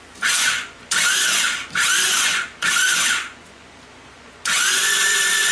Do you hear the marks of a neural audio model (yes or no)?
yes